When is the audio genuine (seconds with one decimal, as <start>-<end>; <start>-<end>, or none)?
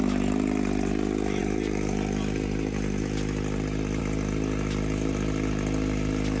0.0-6.4